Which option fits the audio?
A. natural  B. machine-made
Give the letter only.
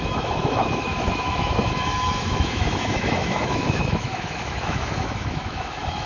B